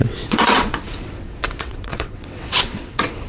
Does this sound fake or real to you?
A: fake